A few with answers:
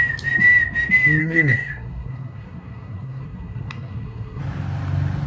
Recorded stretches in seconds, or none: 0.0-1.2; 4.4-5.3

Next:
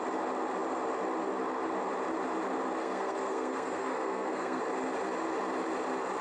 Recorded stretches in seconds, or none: 0.0-2.8; 4.6-6.2